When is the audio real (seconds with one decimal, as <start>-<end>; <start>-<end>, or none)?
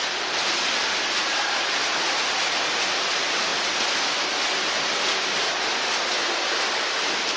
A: 0.0-7.4